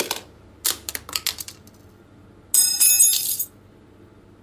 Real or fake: real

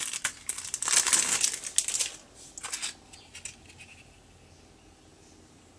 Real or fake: real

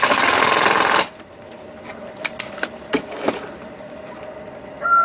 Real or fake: real